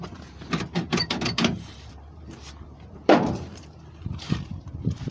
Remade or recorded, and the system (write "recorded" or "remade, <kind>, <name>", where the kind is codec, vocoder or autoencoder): remade, vocoder, BigVGAN v2